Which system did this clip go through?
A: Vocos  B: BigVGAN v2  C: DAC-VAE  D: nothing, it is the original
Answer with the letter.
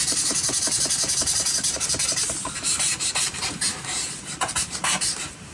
B